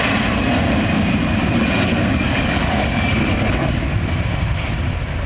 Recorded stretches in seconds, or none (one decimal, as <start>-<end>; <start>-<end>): 0.0-1.9; 4.0-5.3